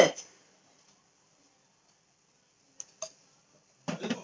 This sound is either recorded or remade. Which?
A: recorded